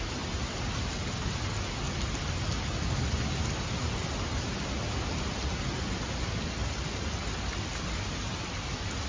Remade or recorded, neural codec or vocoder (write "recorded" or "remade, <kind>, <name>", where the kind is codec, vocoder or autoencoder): recorded